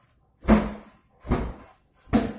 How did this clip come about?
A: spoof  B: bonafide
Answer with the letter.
B